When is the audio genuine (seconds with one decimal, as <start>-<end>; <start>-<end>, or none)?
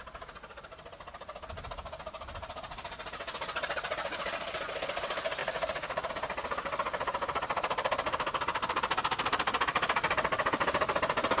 0.0-5.4; 6.1-11.4